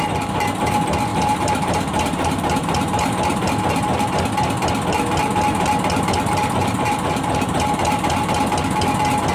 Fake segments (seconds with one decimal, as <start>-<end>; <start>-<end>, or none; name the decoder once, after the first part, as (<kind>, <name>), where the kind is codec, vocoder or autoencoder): 1.1-3.5 (vocoder, BigVGAN v2); 6.6-8.4